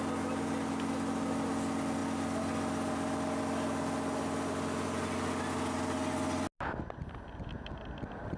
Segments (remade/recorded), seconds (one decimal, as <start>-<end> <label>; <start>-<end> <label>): 0.0-8.4 recorded